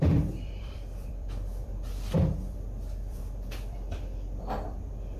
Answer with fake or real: fake